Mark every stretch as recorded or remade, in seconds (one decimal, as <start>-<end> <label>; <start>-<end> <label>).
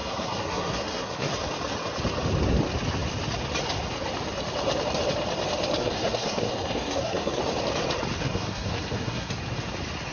0.0-1.3 remade; 1.3-5.8 recorded; 5.8-7.4 remade; 7.4-8.2 recorded; 8.2-9.3 remade; 9.3-10.1 recorded